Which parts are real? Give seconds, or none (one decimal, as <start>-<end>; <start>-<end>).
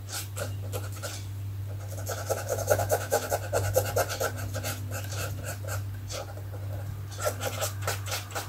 0.0-2.5; 3.3-8.5